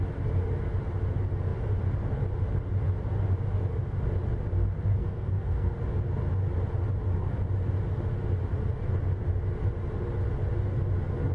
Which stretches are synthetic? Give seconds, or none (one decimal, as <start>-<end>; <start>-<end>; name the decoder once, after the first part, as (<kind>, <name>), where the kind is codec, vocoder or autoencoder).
4.9-5.8 (codec, SNAC)